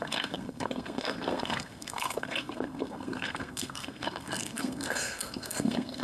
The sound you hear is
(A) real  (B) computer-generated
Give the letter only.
B